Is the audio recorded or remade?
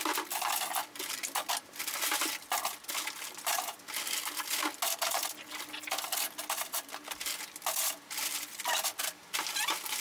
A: recorded